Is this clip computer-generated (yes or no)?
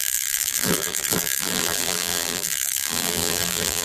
yes